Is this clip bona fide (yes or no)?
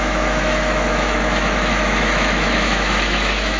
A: no